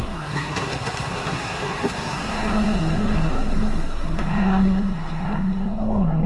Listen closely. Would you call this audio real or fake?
fake